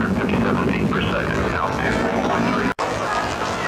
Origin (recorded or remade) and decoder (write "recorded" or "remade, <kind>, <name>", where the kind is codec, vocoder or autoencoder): remade, vocoder, BigVGAN v2